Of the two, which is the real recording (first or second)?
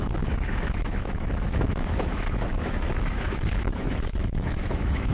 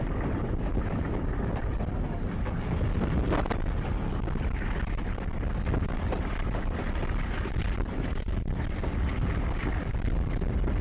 second